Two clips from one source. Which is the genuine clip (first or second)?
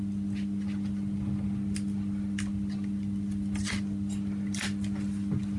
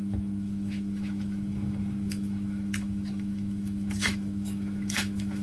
first